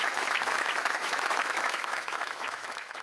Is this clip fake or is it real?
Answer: fake